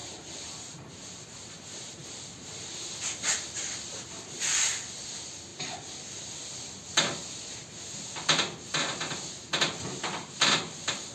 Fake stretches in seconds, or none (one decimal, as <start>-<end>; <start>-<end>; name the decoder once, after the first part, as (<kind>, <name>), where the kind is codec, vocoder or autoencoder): 0.0-1.1 (vocoder, BigVGAN v2)